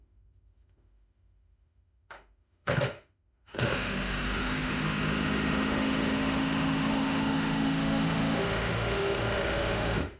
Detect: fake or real fake